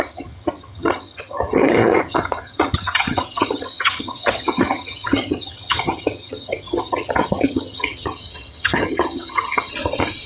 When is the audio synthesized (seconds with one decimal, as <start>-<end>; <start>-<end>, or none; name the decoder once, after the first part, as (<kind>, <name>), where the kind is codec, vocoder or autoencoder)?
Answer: 0.0-9.7 (vocoder, HiFi-GAN)